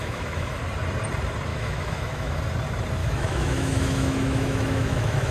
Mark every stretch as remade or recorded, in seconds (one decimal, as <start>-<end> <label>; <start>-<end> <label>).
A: 0.0-0.6 remade; 0.6-1.5 recorded; 1.5-2.4 remade; 2.4-3.0 recorded; 3.0-5.3 remade